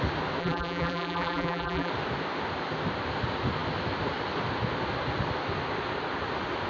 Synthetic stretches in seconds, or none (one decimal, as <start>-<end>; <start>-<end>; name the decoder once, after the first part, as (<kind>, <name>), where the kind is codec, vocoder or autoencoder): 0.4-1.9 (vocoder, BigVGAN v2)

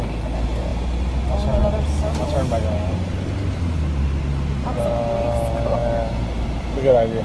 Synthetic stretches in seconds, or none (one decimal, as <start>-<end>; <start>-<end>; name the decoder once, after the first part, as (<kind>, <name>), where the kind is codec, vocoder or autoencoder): none

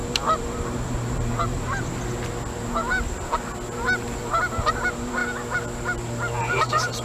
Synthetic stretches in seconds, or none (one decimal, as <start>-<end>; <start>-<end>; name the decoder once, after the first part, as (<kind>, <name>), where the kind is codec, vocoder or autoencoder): 0.0-1.9 (vocoder, BigVGAN v2); 4.2-5.2; 6.4-7.0